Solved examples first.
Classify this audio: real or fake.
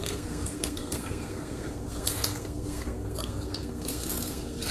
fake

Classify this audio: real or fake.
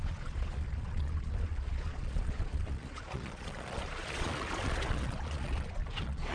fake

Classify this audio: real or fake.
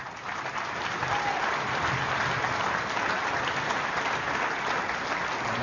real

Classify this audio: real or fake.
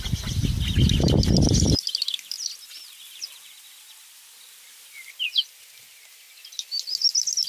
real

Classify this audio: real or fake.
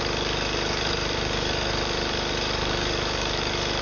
fake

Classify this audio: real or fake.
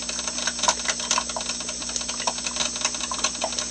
real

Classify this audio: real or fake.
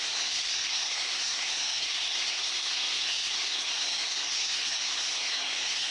fake